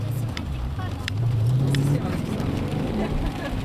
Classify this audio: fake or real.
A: fake